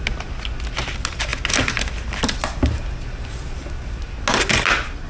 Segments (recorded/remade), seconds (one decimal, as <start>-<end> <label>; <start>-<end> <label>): 0.0-5.1 recorded